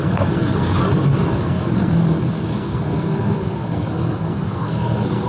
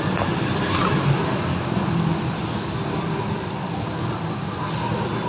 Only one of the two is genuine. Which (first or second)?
second